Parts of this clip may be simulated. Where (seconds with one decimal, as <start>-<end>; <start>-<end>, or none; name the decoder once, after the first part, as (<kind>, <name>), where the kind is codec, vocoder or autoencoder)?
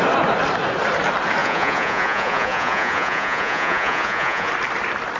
1.4-4.5 (vocoder, Vocos)